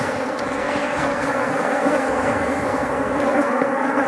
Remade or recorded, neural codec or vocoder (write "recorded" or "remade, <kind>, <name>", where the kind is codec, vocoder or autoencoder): remade, codec, SNAC